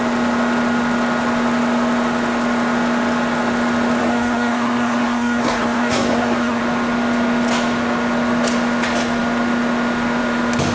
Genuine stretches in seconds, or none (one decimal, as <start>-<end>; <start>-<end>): 0.0-4.0; 6.6-10.7